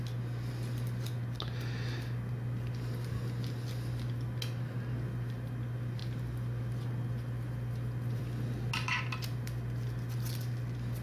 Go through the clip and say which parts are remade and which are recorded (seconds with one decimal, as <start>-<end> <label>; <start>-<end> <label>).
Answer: 0.0-11.0 recorded